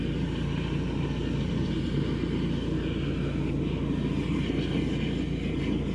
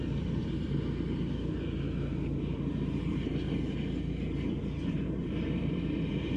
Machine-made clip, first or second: second